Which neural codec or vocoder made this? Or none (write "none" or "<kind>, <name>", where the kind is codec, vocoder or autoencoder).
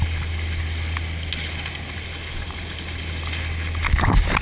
none